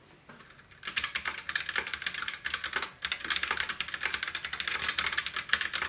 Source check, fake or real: real